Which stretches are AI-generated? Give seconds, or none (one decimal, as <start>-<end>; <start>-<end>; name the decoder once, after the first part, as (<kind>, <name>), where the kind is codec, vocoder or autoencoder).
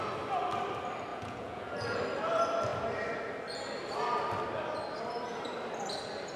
1.1-2.0 (vocoder, Vocos)